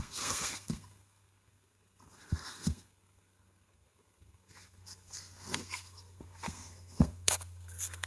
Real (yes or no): no